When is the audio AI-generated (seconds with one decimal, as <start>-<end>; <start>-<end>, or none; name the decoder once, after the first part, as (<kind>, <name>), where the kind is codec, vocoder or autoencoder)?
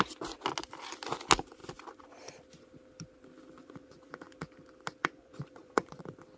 3.6-4.2 (vocoder, Vocos); 5.0-6.0